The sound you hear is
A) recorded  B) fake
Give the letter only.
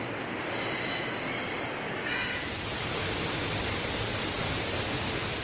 A